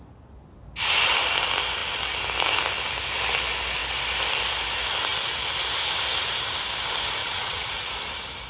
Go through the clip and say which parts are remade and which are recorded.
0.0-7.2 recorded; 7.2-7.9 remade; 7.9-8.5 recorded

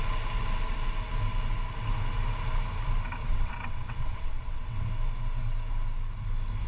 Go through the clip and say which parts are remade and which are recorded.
0.0-3.2 recorded; 3.2-4.9 remade; 4.9-6.7 recorded

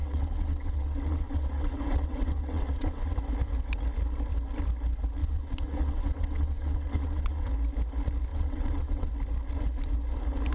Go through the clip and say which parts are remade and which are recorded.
0.0-3.1 remade; 3.1-5.2 recorded; 5.2-7.5 remade; 7.5-8.3 recorded; 8.3-9.1 remade; 9.1-10.5 recorded

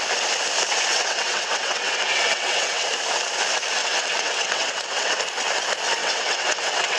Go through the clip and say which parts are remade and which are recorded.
0.0-0.9 recorded; 0.9-2.9 remade; 2.9-3.8 recorded; 3.8-5.2 remade; 5.2-6.0 recorded; 6.0-7.0 remade

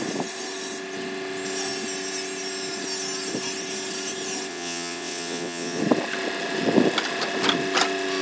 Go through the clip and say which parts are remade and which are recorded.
0.0-4.5 recorded; 4.5-5.8 remade; 5.8-8.2 recorded